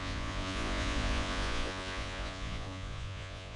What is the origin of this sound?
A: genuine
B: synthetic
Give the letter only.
B